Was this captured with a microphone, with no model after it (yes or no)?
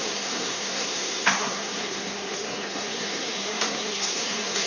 no